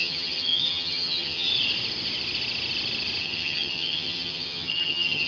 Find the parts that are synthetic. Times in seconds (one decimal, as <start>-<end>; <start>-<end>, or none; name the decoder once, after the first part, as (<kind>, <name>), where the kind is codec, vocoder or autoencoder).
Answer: 0.0-1.5 (vocoder, HiFi-GAN); 3.2-5.3